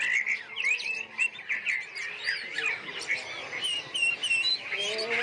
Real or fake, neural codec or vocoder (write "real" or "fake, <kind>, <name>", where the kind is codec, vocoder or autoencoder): real